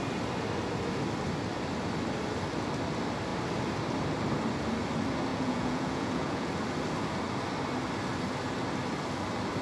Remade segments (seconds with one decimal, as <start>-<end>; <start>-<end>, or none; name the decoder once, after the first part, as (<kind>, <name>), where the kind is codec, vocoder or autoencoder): 5.3-6.5 (vocoder, Vocos)